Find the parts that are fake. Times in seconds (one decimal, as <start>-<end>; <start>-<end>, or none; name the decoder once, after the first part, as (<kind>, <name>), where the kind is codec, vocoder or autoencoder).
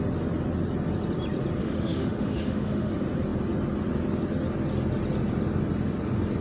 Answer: 1.6-2.9 (autoencoder, DAC-VAE)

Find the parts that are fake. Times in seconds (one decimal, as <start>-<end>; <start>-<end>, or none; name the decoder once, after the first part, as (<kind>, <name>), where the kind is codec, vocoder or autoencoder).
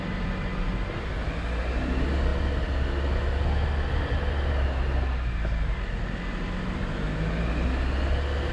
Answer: none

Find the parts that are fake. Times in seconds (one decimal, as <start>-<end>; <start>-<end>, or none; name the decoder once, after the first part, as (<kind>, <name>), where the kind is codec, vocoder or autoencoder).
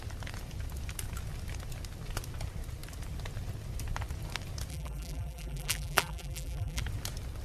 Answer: 4.7-6.8 (vocoder, BigVGAN v2)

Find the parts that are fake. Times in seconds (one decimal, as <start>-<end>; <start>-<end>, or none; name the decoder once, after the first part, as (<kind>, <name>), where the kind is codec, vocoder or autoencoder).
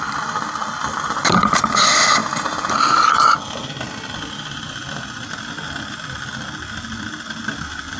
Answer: 0.0-2.2 (vocoder, BigVGAN v2); 6.0-8.0